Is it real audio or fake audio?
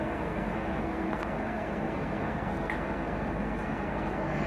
fake